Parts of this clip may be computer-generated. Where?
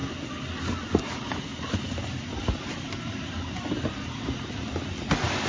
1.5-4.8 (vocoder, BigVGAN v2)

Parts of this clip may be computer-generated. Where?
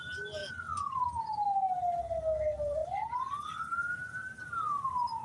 none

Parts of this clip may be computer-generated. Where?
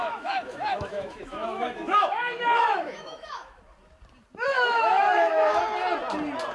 0.0-3.6 (autoencoder, DAC-VAE); 4.5-5.6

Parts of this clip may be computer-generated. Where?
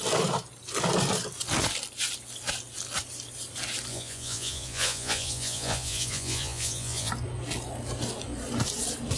3.9-7.1 (vocoder, Vocos)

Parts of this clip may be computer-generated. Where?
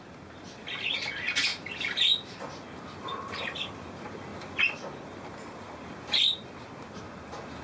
none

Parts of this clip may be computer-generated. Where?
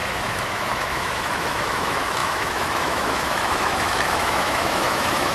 0.0-5.3 (autoencoder, DAC-VAE)